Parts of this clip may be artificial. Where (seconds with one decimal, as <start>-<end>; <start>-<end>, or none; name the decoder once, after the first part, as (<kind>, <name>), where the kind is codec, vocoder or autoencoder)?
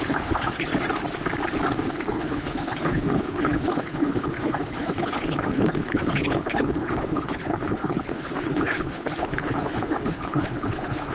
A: 0.0-0.7 (codec, HILCodec); 1.9-11.1